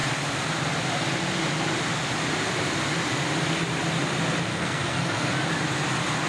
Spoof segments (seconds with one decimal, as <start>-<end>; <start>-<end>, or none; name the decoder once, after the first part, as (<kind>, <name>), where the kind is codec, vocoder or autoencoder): 4.5-5.3 (codec, SNAC)